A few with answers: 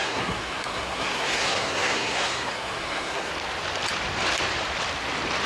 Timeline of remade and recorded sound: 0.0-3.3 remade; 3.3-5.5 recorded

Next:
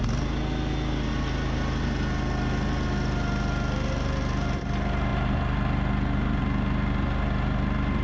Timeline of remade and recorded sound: 0.0-8.0 recorded

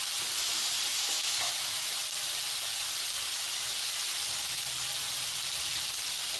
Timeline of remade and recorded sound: 0.0-0.9 recorded; 0.9-1.9 remade; 1.9-6.4 recorded

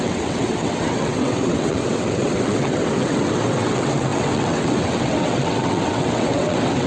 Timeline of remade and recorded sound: 0.0-6.9 remade